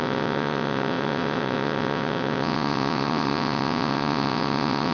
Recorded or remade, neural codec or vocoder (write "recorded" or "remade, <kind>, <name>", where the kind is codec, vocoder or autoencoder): remade, vocoder, WaveNeXt